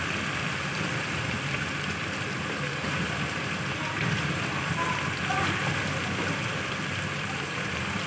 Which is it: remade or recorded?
recorded